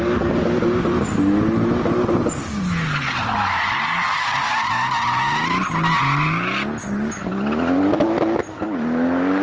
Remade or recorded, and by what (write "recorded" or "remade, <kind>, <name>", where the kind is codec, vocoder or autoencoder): recorded